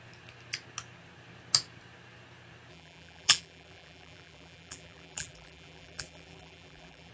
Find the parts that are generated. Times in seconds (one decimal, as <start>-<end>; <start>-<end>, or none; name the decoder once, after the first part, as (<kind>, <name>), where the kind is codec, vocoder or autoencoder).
2.7-7.1 (vocoder, BigVGAN v2)